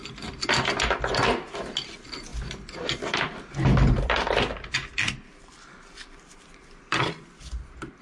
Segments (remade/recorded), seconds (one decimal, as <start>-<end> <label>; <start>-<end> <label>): 0.0-0.6 remade; 0.6-2.3 recorded; 2.3-7.1 remade; 7.1-8.0 recorded